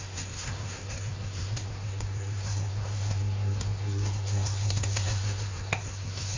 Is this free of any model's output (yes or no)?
no